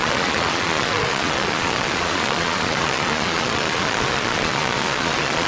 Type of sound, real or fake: fake